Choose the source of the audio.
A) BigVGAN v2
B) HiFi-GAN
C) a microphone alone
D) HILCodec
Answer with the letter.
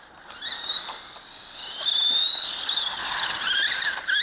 C